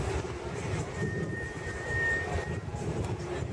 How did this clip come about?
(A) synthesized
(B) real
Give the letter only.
A